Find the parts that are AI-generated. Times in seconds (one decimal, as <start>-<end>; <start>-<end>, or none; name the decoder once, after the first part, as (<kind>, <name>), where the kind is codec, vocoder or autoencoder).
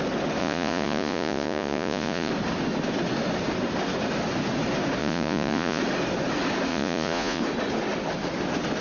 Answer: 0.4-2.3 (vocoder, Vocos); 5.0-5.8; 6.7-7.4